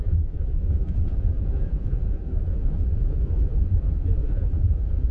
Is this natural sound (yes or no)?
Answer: no